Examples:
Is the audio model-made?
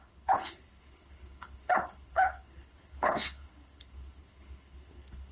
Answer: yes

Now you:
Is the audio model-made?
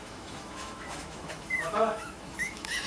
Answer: yes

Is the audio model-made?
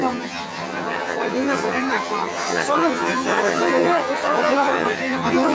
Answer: yes